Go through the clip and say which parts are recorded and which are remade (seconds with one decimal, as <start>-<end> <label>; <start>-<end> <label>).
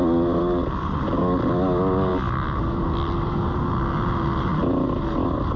0.0-5.6 recorded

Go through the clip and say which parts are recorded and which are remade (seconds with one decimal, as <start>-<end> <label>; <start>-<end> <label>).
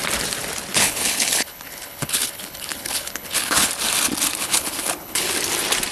0.0-0.7 recorded; 0.7-3.7 remade; 3.7-4.4 recorded; 4.4-5.3 remade; 5.3-5.9 recorded